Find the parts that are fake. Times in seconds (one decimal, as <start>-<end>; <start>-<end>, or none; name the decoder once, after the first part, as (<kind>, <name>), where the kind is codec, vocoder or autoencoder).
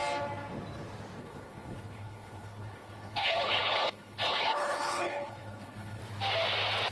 1.2-6.0 (codec, HILCodec)